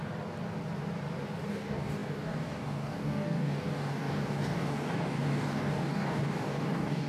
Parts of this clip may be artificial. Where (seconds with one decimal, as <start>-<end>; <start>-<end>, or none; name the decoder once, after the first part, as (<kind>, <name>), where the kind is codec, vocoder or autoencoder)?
1.5-7.1 (codec, DAC)